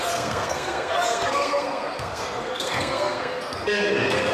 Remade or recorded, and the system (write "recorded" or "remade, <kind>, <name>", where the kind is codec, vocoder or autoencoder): remade, codec, SNAC